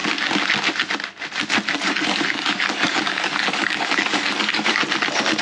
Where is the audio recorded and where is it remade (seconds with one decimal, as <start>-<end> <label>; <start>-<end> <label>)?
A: 0.0-1.9 recorded; 1.9-4.8 remade; 4.8-5.4 recorded